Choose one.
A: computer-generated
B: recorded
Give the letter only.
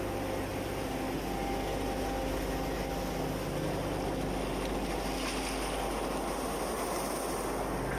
B